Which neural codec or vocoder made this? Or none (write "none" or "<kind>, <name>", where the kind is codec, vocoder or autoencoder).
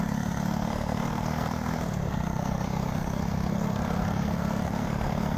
codec, SNAC